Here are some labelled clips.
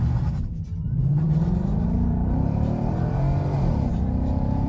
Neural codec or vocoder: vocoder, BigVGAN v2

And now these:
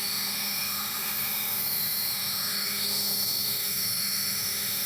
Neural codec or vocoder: autoencoder, DAC-VAE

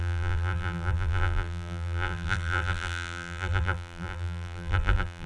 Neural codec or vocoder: vocoder, BigVGAN v2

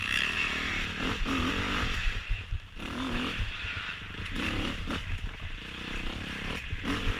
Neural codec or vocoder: vocoder, BigVGAN v2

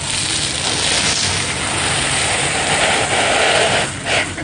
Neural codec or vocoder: none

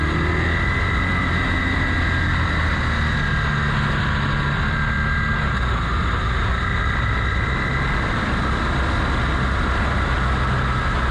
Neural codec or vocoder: none